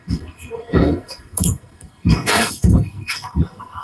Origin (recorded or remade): remade